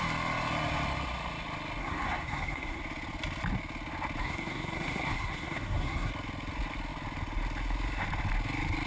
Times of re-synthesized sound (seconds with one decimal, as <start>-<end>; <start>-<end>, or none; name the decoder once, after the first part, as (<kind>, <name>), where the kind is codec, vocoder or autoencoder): 1.8-2.8 (codec, SNAC); 4.2-6.1